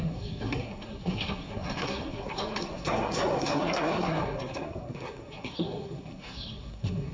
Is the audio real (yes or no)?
no